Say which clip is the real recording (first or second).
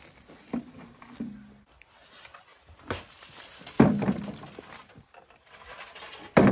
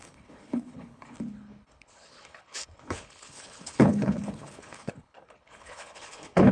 first